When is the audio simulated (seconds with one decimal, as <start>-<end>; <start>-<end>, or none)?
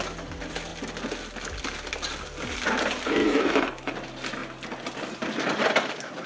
3.2-3.9